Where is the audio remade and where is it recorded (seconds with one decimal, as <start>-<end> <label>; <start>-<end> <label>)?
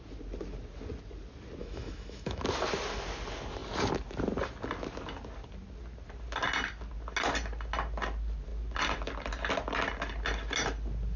0.0-1.6 recorded; 1.6-2.4 remade; 2.4-11.2 recorded